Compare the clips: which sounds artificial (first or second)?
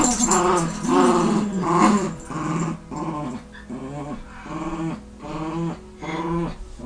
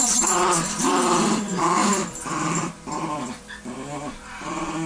second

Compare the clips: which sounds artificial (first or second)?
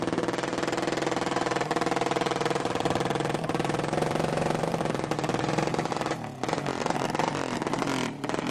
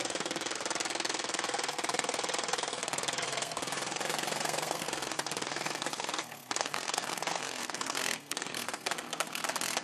second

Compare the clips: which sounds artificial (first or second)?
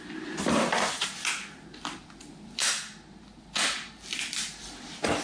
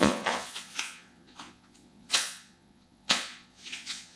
second